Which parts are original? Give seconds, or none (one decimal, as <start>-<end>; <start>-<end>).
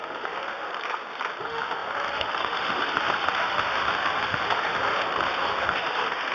0.7-1.4